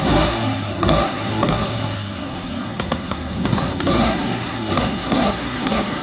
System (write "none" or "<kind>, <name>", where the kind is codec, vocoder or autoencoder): codec, SNAC